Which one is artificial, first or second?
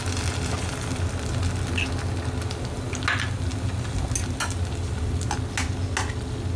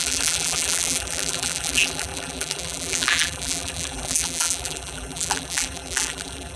second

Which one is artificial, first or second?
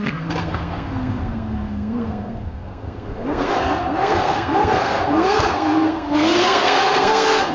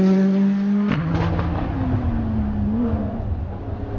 first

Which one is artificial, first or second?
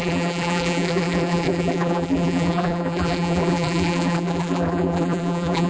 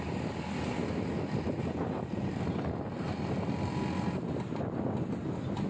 first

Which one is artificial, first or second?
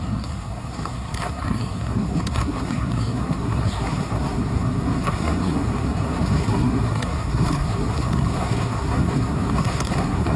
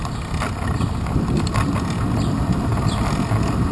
first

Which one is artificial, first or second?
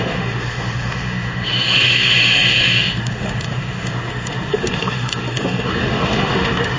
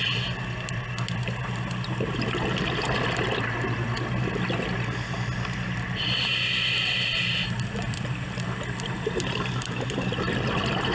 first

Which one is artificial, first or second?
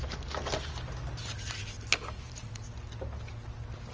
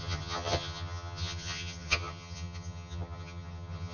second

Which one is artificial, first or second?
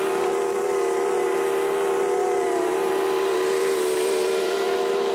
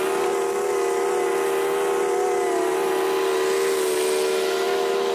first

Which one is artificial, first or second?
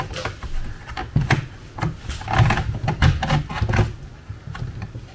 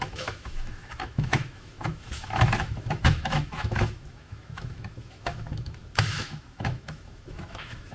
second